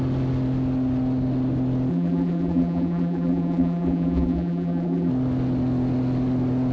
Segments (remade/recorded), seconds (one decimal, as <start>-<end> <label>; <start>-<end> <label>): 0.0-1.9 recorded; 1.9-5.1 remade; 5.1-6.7 recorded